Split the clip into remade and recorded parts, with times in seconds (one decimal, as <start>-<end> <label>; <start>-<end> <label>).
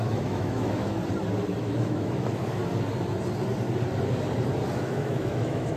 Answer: 0.0-1.0 remade; 1.0-1.6 recorded; 1.6-2.6 remade; 2.6-4.7 recorded; 4.7-5.8 remade